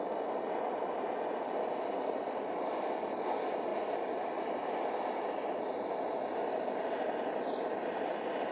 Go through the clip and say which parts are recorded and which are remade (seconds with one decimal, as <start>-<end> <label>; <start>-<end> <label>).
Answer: 0.0-8.5 recorded